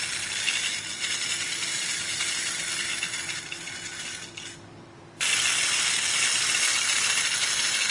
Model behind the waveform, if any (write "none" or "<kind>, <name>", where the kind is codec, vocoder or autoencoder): none